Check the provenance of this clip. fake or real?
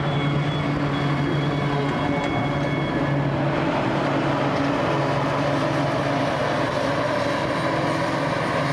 real